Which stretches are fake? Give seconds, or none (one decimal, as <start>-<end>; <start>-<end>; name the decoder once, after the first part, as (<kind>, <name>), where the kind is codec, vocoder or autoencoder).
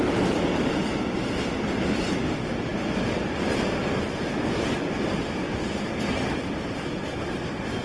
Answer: none